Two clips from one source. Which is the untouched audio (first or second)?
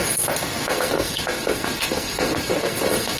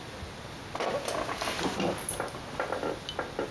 second